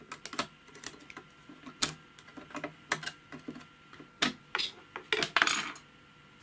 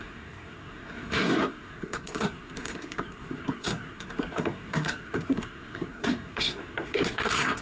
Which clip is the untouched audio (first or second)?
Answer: first